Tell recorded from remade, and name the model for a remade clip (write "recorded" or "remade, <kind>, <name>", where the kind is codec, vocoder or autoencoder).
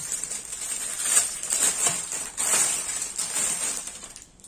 remade, vocoder, BigVGAN v2